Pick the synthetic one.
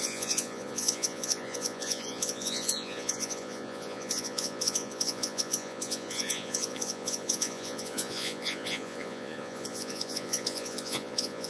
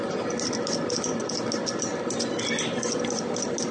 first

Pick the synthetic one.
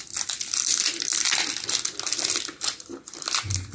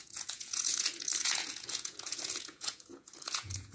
second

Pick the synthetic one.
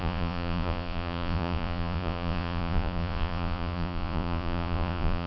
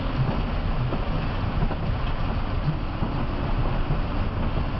first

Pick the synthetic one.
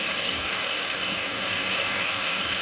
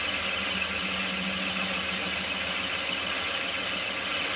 first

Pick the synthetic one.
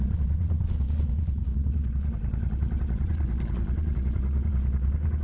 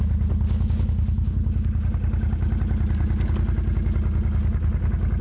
first